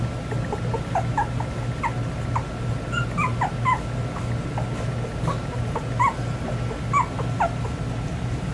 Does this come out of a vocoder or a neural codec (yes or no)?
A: no